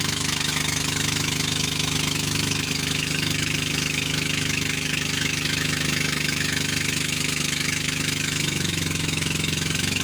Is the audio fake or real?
fake